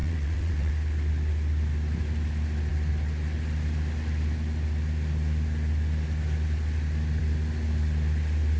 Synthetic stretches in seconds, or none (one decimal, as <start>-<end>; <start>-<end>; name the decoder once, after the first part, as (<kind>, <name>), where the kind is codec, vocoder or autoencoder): 0.0-0.7 (vocoder, WaveNeXt)

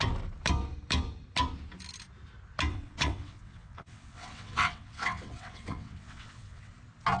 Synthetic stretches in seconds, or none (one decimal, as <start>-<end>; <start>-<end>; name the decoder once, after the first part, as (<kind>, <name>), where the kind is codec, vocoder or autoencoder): 2.7-6.7 (vocoder, WaveNeXt)